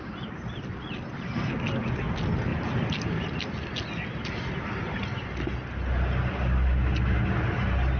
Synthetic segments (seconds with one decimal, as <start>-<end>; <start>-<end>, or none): none